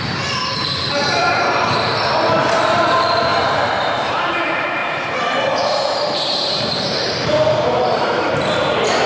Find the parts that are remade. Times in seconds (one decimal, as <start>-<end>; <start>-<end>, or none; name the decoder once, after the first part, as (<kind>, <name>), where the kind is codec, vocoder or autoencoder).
0.0-4.8 (vocoder, BigVGAN v2); 5.6-9.1